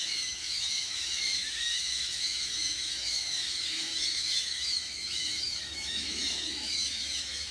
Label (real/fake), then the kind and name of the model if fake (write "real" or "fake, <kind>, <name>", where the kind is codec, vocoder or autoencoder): fake, autoencoder, DAC-VAE